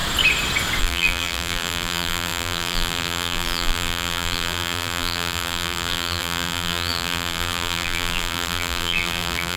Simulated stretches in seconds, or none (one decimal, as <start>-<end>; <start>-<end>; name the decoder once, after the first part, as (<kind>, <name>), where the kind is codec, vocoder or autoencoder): 0.8-9.6 (vocoder, BigVGAN v2)